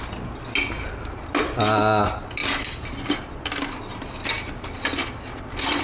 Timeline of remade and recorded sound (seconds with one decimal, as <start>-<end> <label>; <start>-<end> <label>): 0.0-5.8 recorded